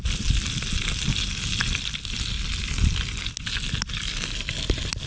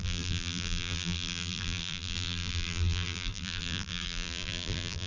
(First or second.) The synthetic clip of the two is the second